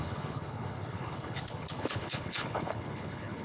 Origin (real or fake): fake